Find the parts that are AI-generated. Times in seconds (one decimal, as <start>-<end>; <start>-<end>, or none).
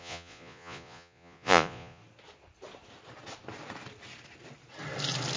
0.0-2.0